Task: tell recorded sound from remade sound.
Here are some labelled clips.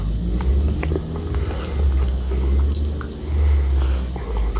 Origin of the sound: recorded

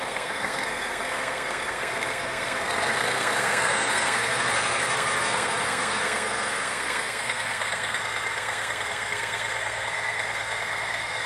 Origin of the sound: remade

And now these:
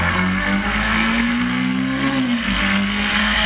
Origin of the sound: remade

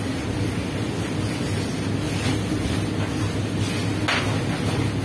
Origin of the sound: recorded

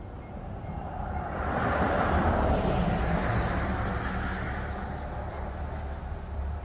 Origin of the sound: recorded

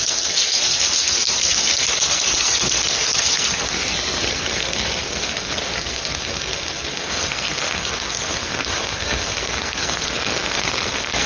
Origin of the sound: remade